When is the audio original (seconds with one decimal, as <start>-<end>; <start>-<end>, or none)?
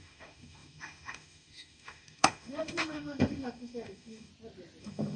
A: 4.3-4.8